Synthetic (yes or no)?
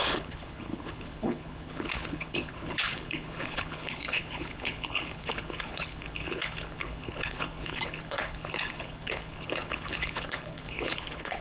yes